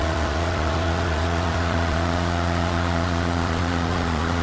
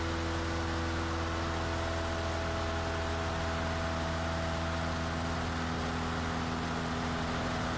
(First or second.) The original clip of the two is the second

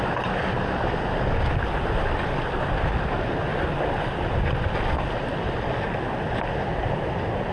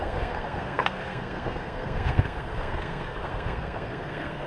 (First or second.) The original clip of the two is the first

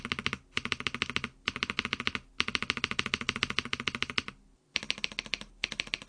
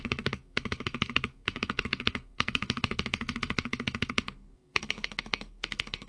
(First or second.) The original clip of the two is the first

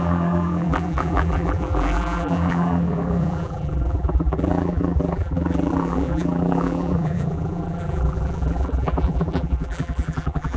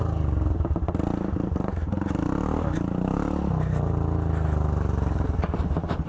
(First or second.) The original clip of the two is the second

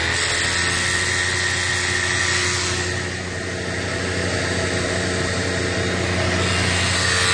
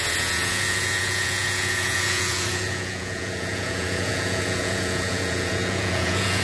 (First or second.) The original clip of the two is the first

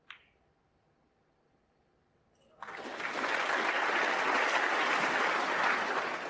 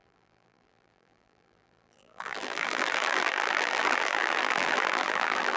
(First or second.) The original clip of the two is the first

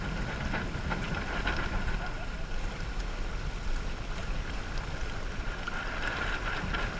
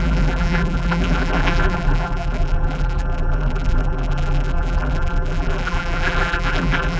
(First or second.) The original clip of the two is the first